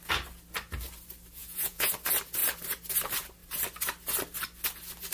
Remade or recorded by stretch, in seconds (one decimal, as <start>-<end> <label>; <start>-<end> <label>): 0.0-1.4 recorded; 1.4-1.9 remade; 1.9-5.1 recorded